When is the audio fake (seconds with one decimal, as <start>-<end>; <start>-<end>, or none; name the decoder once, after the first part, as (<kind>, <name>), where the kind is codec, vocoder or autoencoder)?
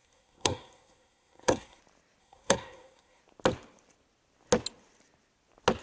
0.0-1.8 (codec, SNAC); 2.2-3.2